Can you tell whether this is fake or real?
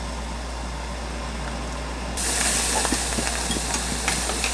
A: real